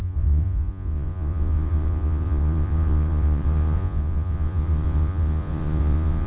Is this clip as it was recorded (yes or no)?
no